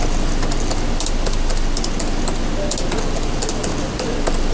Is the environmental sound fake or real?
real